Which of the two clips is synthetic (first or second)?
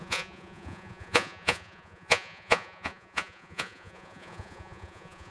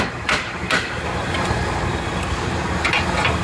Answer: first